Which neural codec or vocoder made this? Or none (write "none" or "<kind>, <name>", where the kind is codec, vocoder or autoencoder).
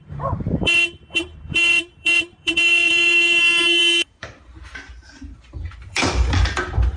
vocoder, BigVGAN v2